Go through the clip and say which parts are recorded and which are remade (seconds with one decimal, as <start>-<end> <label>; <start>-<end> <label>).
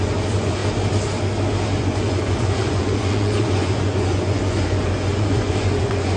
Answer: 0.0-0.6 remade; 0.6-1.8 recorded; 1.8-6.2 remade